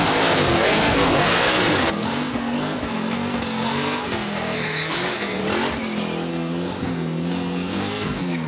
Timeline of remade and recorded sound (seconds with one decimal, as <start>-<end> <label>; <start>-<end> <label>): 0.0-5.4 remade; 5.4-6.3 recorded; 6.3-8.5 remade